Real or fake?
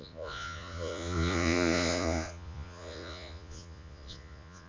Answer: fake